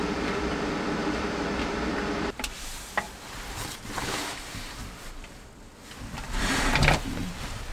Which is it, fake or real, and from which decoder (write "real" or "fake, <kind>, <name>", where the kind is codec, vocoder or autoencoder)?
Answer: fake, vocoder, BigVGAN v2